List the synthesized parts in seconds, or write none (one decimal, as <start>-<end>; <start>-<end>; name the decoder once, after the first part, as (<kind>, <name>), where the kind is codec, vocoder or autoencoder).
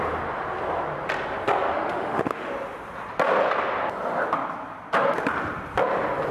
1.7-2.5 (autoencoder, DAC-VAE)